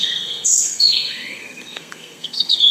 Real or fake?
fake